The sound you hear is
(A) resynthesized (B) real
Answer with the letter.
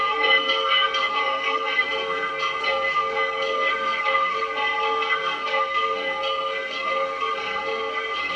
A